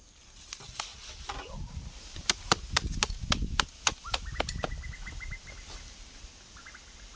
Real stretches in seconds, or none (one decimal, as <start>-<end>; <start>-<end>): 0.0-7.2